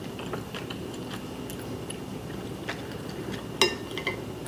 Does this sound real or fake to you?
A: real